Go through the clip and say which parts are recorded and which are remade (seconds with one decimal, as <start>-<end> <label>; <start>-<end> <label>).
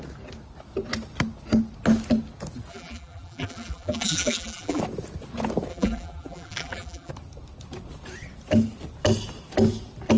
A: 0.0-2.7 recorded; 2.7-4.8 remade; 4.8-5.7 recorded; 5.7-7.1 remade; 7.1-10.2 recorded